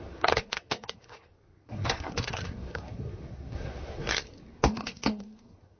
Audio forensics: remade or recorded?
remade